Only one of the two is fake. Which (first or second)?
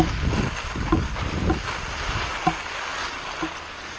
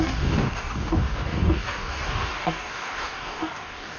second